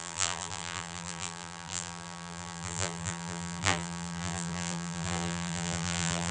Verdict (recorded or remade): remade